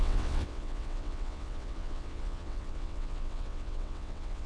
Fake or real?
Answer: fake